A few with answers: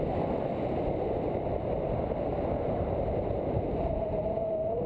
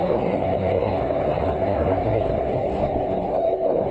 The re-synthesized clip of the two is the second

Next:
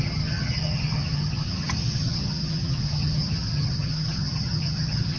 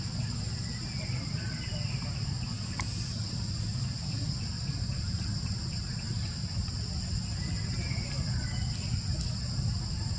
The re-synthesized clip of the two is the first